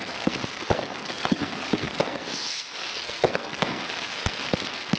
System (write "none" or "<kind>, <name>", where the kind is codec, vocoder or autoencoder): codec, SNAC